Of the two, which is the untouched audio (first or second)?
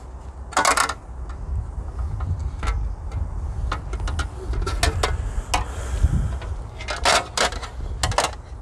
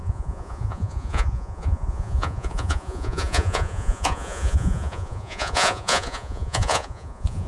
first